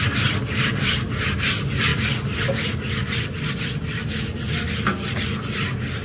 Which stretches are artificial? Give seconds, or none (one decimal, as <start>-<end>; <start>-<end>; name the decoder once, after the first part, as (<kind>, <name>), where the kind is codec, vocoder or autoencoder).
none